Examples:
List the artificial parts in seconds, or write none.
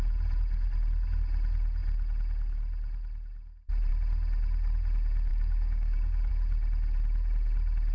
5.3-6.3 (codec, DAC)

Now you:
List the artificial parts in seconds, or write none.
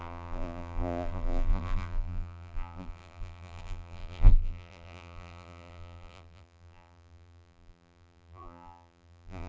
0.0-9.5 (vocoder, BigVGAN v2)